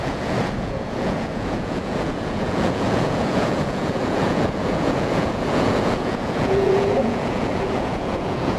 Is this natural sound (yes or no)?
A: no